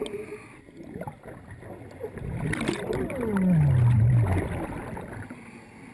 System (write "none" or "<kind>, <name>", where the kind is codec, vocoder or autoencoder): none